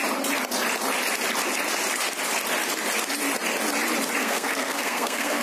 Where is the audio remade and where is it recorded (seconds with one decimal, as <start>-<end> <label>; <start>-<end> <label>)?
0.0-4.2 recorded; 4.2-5.4 remade